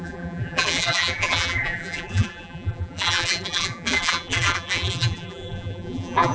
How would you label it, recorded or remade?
remade